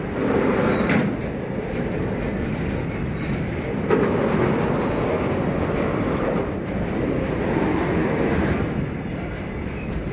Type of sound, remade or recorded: recorded